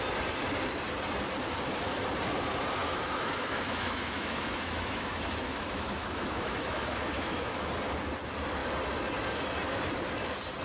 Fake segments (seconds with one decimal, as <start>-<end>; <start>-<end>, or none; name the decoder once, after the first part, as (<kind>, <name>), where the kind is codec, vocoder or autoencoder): 2.8-7.7 (autoencoder, DAC-VAE)

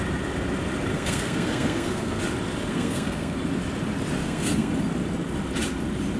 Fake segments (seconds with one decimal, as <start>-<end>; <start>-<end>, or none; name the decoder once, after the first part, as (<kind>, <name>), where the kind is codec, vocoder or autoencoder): 0.9-2.2 (codec, SNAC); 2.7-3.4; 4.2-4.7

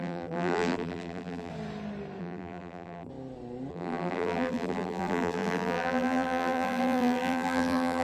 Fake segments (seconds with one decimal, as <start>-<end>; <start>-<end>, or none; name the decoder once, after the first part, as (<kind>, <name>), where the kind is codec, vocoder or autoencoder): 0.0-1.5 (vocoder, BigVGAN v2); 2.2-3.1; 3.7-8.0

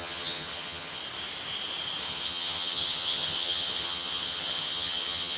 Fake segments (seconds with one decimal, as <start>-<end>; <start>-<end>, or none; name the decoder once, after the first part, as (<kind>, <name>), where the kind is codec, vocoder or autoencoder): 0.0-1.0 (vocoder, HiFi-GAN); 2.0-5.4

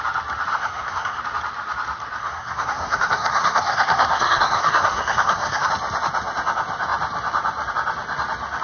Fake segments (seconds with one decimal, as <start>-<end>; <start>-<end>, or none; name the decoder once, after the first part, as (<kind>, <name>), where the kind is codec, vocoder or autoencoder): 0.5-1.2 (codec, SNAC); 2.2-5.7

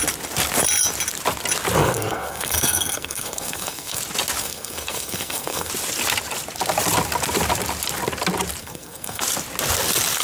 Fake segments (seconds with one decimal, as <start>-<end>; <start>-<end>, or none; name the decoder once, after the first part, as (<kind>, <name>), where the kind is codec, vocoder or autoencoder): 1.8-4.0 (codec, SNAC); 4.4-5.7; 8.6-9.2

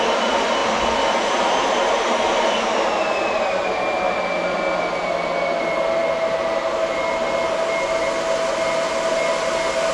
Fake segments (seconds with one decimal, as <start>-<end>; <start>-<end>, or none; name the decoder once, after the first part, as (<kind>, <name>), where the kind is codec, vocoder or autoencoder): none

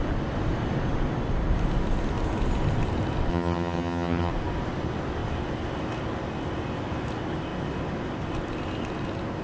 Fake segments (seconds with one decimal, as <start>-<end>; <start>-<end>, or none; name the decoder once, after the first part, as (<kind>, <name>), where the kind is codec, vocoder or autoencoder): 3.3-4.3 (vocoder, HiFi-GAN)